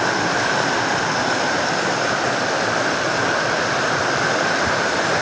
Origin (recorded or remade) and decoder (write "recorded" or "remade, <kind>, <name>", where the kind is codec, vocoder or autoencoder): recorded